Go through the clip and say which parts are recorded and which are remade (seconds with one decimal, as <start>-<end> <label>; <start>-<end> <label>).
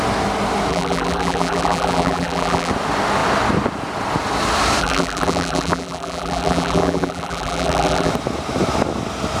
0.0-0.7 recorded; 0.7-2.7 remade; 2.7-4.8 recorded; 4.8-8.1 remade; 8.1-9.4 recorded